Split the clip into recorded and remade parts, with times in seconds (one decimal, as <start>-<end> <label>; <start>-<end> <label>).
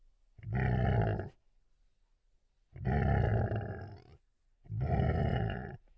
0.0-5.3 recorded; 5.3-6.0 remade